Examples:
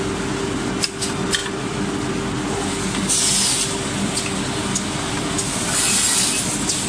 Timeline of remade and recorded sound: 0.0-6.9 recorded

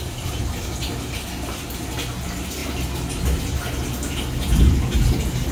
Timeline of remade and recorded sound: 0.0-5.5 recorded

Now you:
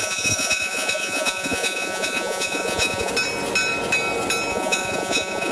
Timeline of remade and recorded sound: 0.0-3.1 remade; 3.1-4.5 recorded; 4.5-5.5 remade

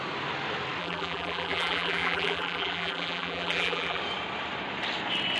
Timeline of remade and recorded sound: 0.0-0.8 recorded; 0.8-4.0 remade; 4.0-5.4 recorded

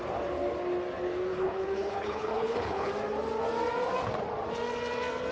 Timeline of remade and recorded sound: 0.0-1.3 recorded; 1.3-2.9 remade; 2.9-5.3 recorded

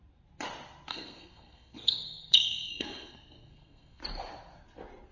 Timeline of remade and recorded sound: 0.0-0.9 recorded; 0.9-4.0 remade; 4.0-5.1 recorded

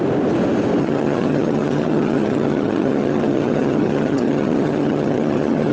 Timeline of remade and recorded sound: 0.0-0.8 recorded; 0.8-5.7 remade

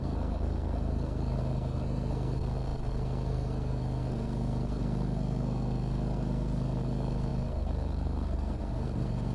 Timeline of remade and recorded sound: 0.0-9.3 remade